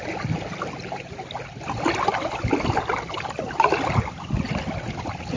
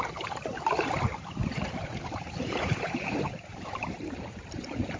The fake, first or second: second